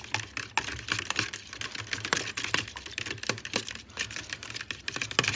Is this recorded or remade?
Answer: recorded